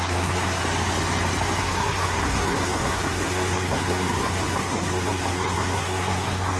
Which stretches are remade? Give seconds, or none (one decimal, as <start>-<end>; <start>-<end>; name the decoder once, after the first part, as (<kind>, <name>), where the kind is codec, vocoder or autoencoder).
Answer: 0.0-0.6 (codec, SNAC); 1.6-6.6